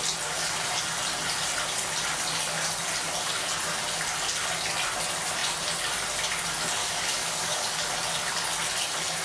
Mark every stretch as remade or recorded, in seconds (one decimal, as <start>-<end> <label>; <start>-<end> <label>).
0.0-6.8 recorded; 6.8-7.9 remade; 7.9-9.2 recorded